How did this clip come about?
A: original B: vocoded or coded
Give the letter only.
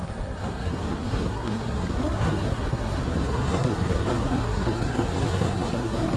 B